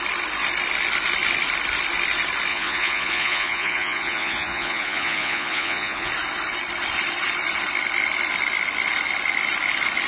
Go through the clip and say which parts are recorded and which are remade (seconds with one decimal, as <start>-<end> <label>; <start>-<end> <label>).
0.0-2.5 recorded; 2.5-6.1 remade; 6.1-10.1 recorded

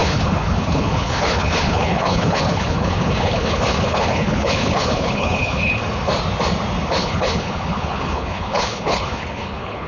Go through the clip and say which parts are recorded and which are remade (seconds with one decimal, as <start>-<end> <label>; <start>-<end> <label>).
0.0-5.8 remade; 5.8-7.0 recorded; 7.0-9.9 remade

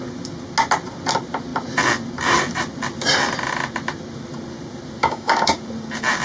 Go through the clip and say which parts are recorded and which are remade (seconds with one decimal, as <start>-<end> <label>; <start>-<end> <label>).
0.0-5.0 recorded; 5.0-5.6 remade; 5.6-6.2 recorded

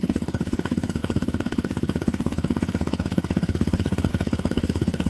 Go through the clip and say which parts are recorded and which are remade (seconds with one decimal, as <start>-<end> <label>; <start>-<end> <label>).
0.0-5.1 remade

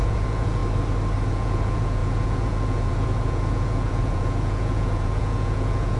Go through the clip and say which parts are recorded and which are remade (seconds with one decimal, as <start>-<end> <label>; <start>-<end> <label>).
0.0-0.6 remade; 0.6-1.3 recorded; 1.3-6.0 remade